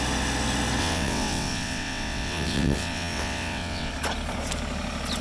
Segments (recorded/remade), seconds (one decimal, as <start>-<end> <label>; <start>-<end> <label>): 0.0-0.8 recorded; 0.8-3.9 remade; 3.9-5.2 recorded